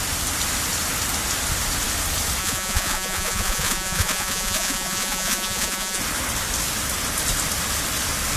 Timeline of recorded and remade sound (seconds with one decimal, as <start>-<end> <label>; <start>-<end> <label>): 0.0-2.4 recorded; 2.4-6.0 remade; 6.0-8.4 recorded